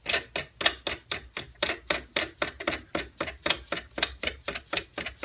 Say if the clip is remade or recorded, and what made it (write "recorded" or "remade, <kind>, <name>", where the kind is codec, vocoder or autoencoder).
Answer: recorded